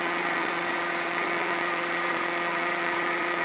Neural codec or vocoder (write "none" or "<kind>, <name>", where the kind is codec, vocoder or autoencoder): vocoder, Vocos